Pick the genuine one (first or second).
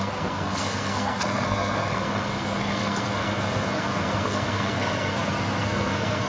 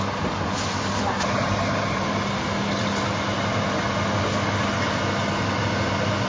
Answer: second